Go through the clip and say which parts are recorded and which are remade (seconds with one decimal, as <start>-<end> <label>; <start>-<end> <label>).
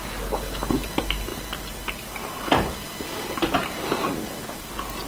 0.0-5.1 recorded